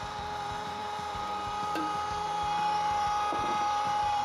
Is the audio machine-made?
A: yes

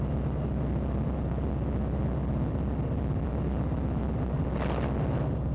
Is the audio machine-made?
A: no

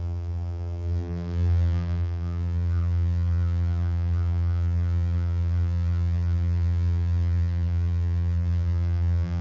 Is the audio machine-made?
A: yes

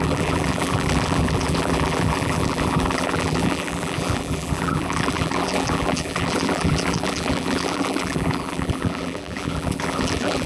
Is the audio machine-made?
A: yes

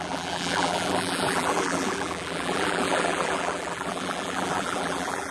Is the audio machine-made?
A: yes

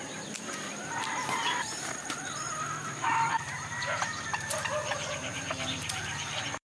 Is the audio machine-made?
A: yes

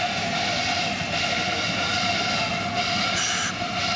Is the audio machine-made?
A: no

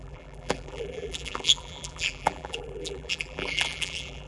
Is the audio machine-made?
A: yes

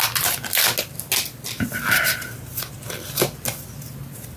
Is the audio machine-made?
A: no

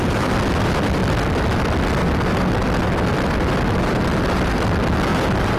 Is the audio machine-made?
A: no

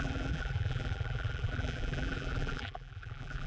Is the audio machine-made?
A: yes